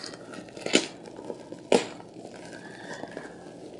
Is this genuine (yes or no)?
yes